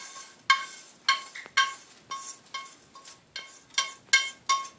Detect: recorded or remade recorded